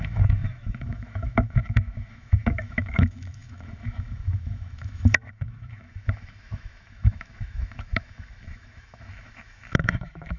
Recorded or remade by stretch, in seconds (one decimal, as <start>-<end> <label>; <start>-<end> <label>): 0.0-10.4 remade